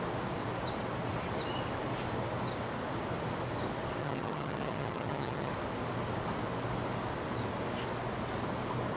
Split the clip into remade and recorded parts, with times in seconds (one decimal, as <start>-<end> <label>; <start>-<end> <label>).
0.0-4.0 recorded; 4.0-5.5 remade; 5.5-9.0 recorded

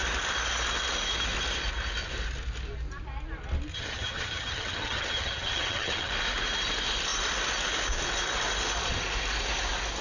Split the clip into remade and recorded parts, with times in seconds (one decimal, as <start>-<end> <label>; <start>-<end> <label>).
0.0-3.7 recorded; 3.7-6.1 remade; 6.1-10.0 recorded

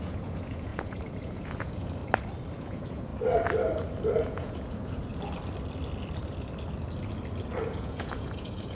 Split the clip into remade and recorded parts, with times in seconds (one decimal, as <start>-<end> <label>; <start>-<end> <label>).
0.0-2.0 remade; 2.0-2.6 recorded; 2.6-3.1 remade; 3.1-4.2 recorded; 4.2-5.1 remade; 5.1-7.6 recorded; 7.6-8.7 remade

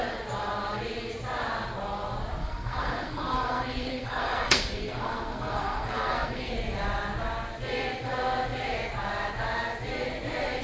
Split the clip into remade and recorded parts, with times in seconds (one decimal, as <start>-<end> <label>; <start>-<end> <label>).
0.0-2.4 recorded; 2.4-6.5 remade; 6.5-10.6 recorded

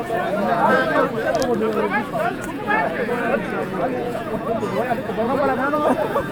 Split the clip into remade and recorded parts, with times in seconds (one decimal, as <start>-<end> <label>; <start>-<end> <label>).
0.0-1.2 remade; 1.2-2.2 recorded; 2.2-6.3 remade

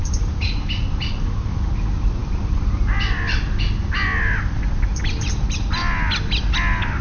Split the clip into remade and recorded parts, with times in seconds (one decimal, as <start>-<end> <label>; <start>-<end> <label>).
0.0-7.0 recorded

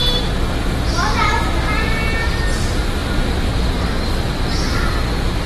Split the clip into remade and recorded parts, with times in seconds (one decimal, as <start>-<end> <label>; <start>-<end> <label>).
0.0-3.0 recorded; 3.0-3.5 remade; 3.5-5.5 recorded

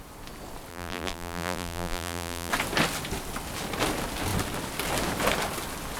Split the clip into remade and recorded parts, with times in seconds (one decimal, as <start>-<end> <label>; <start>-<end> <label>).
0.0-0.7 recorded; 0.7-2.5 remade; 2.5-6.0 recorded